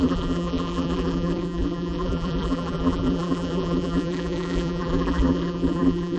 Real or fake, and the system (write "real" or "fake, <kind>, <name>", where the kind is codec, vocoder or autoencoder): fake, vocoder, BigVGAN v2